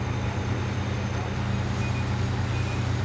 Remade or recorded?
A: recorded